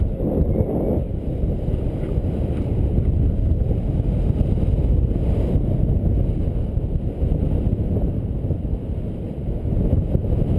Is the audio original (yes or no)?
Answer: yes